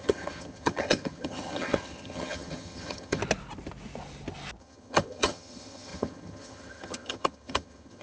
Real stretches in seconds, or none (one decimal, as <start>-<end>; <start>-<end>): 3.2-4.6

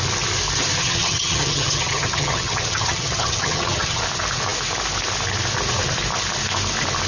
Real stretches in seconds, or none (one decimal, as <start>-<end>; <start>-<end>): 0.0-0.8; 4.0-7.1

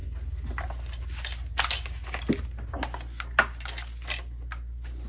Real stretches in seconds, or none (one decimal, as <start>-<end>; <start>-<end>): 0.0-5.1

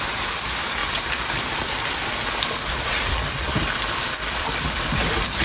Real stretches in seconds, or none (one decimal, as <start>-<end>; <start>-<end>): 0.0-5.4

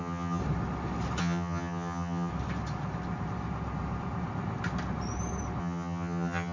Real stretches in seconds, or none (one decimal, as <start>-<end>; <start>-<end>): 0.4-1.2; 2.3-5.6

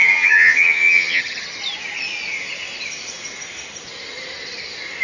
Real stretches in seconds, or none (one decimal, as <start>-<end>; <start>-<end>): 1.2-5.0